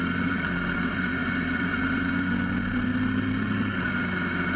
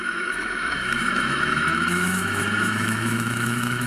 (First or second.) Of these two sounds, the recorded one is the first